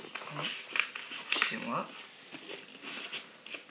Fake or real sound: real